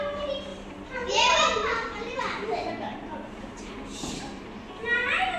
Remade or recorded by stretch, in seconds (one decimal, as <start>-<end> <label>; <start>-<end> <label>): 0.0-0.5 recorded; 0.5-3.7 remade; 3.7-5.4 recorded

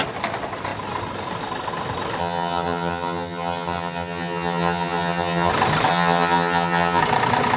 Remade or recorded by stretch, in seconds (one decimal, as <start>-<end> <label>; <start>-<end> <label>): 0.0-2.2 recorded; 2.2-5.5 remade; 5.5-5.9 recorded; 5.9-7.0 remade; 7.0-7.6 recorded